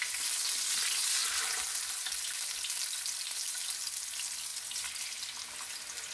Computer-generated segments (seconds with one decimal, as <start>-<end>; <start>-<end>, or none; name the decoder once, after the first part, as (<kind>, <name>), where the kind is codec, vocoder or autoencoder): none